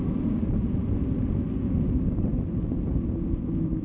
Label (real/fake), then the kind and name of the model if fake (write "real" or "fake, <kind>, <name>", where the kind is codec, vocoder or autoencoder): real